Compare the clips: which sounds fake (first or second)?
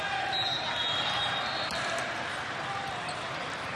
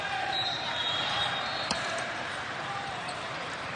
second